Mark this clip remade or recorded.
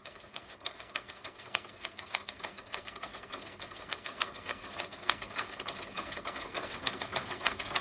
remade